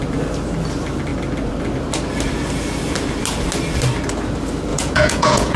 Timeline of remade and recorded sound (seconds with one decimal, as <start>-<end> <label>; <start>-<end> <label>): 0.0-4.7 recorded; 4.7-5.6 remade